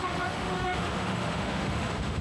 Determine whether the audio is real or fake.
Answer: fake